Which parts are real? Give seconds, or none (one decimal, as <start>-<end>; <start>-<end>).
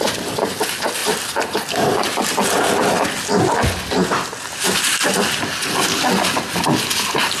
0.0-7.4